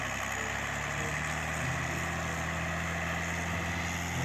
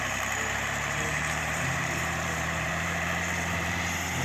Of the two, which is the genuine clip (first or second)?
first